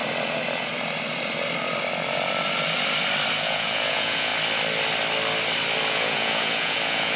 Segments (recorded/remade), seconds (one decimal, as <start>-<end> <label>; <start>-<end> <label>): 0.0-3.4 recorded; 3.4-4.3 remade; 4.3-5.9 recorded; 5.9-7.2 remade